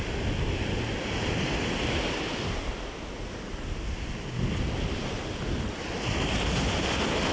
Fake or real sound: real